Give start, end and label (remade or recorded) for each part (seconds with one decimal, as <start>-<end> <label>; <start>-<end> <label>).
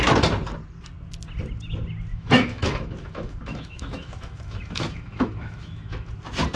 0.0-2.1 recorded; 2.1-6.1 remade; 6.1-6.6 recorded